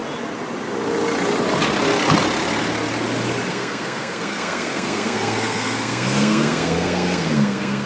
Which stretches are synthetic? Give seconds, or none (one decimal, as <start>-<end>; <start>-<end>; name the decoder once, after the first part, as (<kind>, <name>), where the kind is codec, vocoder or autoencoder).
3.5-7.9 (codec, SNAC)